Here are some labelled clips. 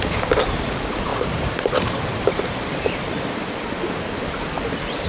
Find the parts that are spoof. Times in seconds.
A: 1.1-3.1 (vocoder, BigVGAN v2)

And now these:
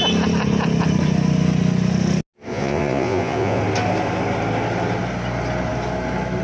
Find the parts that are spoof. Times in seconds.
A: 2.5-3.6 (vocoder, Vocos)

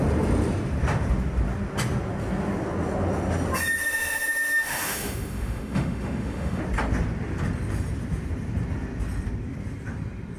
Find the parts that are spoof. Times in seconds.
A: 3.8-6.6 (autoencoder, DAC-VAE)

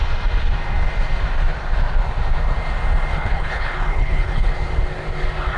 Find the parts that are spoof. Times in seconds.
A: 3.1-4.5 (codec, HILCodec)

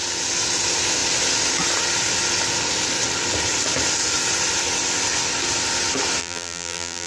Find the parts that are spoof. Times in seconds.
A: 6.2-7.1 (vocoder, BigVGAN v2)